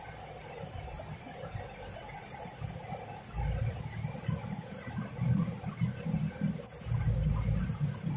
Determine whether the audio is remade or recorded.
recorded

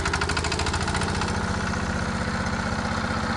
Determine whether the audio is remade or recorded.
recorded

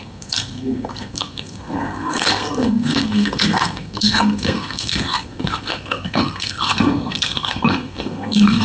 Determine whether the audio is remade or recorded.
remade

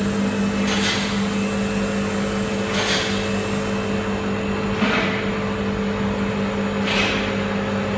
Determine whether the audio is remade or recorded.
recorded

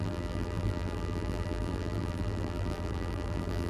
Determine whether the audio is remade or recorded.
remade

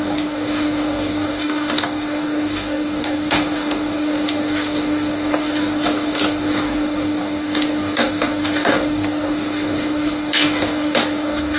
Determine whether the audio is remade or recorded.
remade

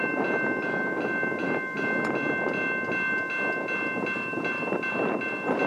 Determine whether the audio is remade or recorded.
recorded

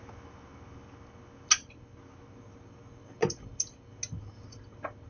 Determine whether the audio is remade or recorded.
recorded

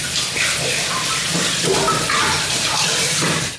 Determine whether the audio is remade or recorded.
recorded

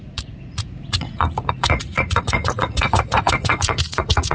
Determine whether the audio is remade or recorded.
remade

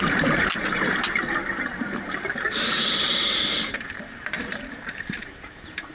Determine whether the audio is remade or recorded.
remade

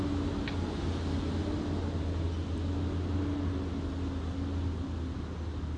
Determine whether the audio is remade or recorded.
recorded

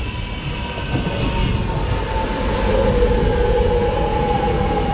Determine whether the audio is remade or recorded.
recorded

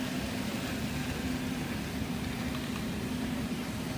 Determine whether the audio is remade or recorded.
recorded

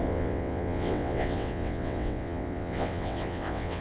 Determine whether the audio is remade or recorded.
remade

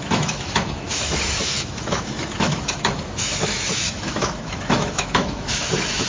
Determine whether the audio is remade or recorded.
remade